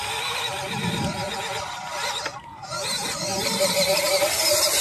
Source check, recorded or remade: recorded